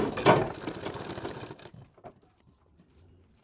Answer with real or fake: real